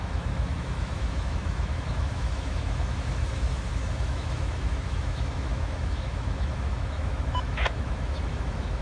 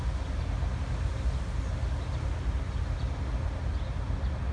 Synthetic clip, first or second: first